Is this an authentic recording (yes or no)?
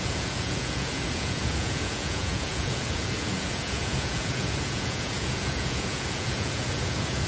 no